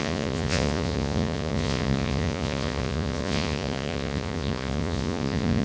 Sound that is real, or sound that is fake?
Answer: fake